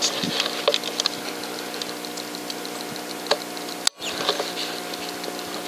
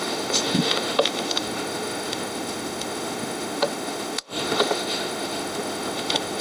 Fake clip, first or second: second